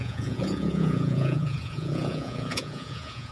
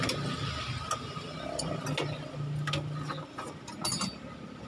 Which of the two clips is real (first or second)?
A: second